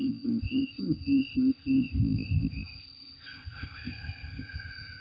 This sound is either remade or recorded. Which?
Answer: remade